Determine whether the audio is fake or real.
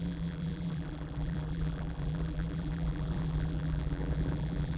fake